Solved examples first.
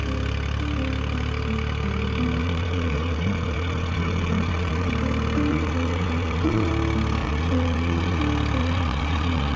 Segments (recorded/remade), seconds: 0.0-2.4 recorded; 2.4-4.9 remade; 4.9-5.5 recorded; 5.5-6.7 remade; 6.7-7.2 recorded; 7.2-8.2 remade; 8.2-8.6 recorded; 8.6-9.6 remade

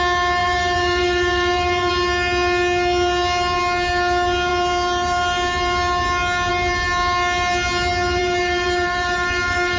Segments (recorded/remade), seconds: 0.0-0.4 recorded; 0.4-1.9 remade; 1.9-8.2 recorded; 8.2-9.8 remade